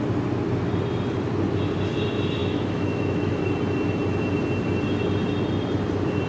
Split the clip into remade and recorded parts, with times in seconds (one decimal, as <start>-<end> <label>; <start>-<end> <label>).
0.0-2.4 recorded; 2.4-3.4 remade; 3.4-6.3 recorded